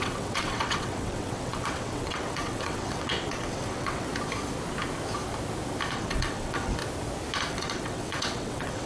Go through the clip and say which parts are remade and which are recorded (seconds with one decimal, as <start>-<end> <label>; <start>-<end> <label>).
0.0-4.1 remade; 4.1-5.9 recorded; 5.9-6.8 remade; 6.8-7.5 recorded; 7.5-8.9 remade